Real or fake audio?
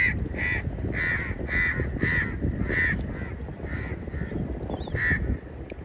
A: real